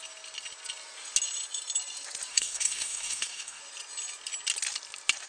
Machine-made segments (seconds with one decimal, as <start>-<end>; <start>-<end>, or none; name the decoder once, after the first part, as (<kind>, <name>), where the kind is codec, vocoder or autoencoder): 2.3-3.6 (codec, SNAC)